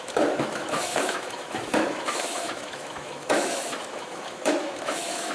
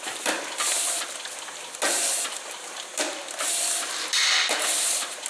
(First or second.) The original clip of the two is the second